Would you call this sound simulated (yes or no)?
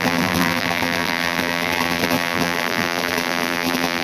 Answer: yes